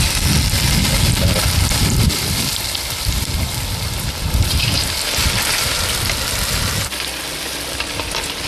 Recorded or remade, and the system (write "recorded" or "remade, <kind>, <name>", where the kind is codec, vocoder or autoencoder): recorded